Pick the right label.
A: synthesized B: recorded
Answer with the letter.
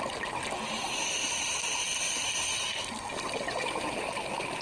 B